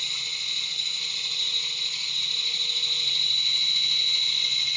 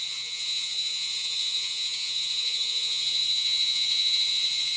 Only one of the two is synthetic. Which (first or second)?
second